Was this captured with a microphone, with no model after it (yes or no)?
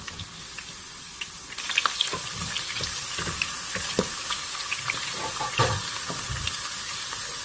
yes